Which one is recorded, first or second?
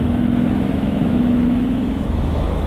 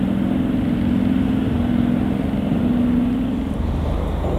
second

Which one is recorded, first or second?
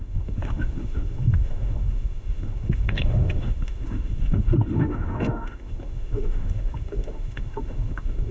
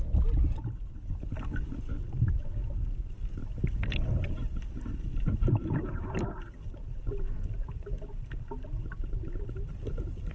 second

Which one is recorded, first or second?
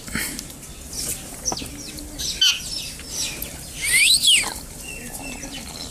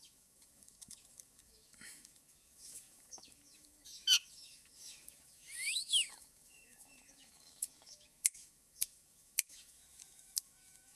first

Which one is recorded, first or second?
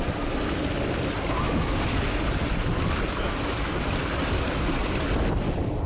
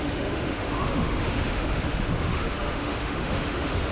first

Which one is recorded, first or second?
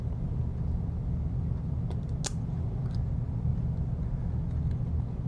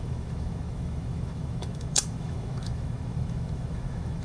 first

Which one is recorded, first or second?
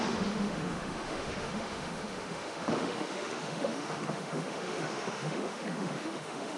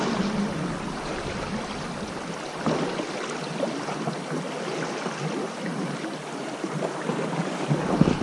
second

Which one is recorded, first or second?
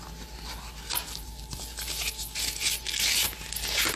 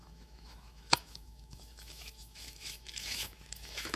first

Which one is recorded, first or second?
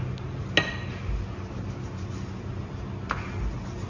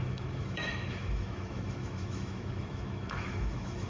first